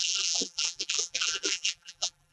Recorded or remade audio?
remade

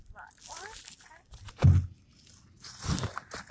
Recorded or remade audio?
recorded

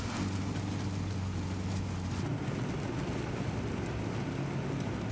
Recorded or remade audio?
recorded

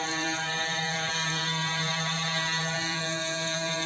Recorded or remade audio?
remade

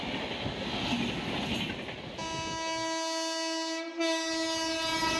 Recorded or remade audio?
recorded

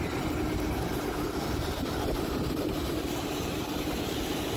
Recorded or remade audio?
remade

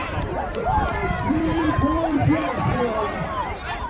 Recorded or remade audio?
remade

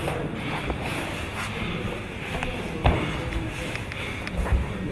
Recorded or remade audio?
recorded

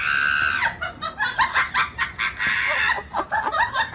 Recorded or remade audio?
recorded